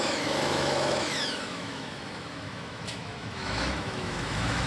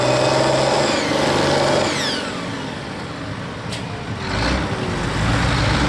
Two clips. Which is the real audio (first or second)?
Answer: second